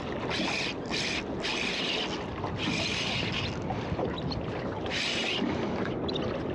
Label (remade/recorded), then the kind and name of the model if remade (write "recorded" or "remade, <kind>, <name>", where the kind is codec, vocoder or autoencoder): recorded